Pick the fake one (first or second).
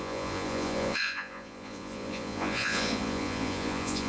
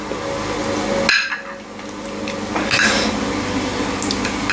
first